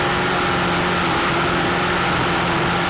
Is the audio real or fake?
real